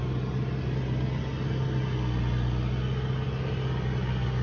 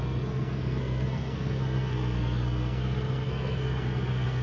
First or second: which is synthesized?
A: second